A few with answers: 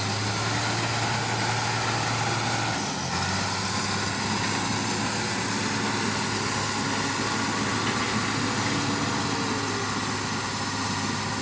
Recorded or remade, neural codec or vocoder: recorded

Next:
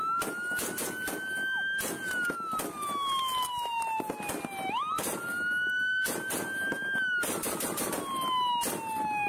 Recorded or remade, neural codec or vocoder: recorded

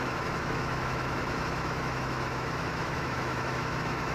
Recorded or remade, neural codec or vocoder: remade, autoencoder, DAC-VAE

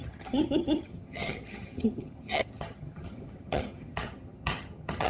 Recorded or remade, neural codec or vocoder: remade, vocoder, HiFi-GAN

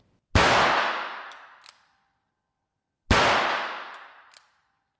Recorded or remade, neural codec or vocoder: recorded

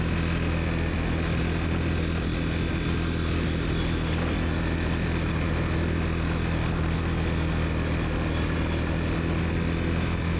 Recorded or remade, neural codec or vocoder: recorded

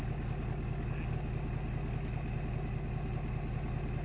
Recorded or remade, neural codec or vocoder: recorded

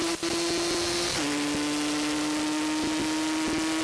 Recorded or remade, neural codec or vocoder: recorded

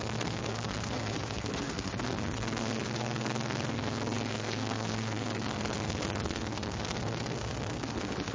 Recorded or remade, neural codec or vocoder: remade, codec, SNAC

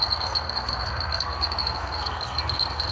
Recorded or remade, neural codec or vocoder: remade, codec, SNAC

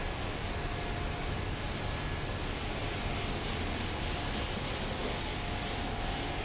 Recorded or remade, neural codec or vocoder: recorded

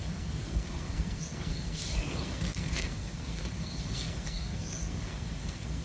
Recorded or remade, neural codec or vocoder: remade, codec, SNAC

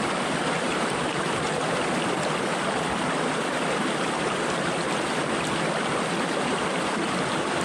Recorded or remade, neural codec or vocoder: recorded